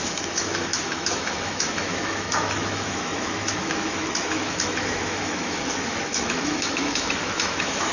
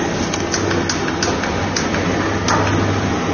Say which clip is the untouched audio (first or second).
second